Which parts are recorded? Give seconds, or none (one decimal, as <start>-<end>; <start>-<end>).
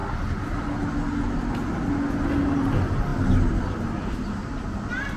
0.0-5.2